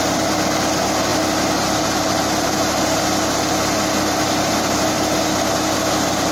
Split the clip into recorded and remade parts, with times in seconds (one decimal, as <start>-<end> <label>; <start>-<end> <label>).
0.0-6.3 recorded